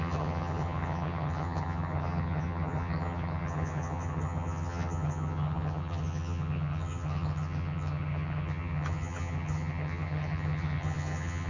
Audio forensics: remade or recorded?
remade